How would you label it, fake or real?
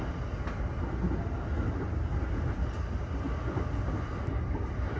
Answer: real